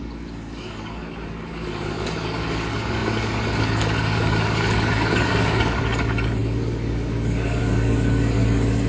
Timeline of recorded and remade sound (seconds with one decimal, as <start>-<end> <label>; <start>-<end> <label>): 0.0-8.9 remade